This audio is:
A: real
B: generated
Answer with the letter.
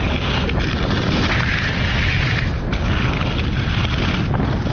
A